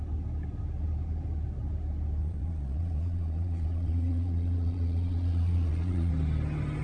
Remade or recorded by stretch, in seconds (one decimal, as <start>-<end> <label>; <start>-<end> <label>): 0.0-2.2 recorded; 2.2-6.1 remade; 6.1-6.8 recorded